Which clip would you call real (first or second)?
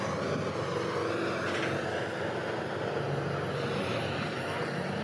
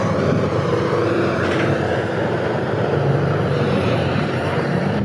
first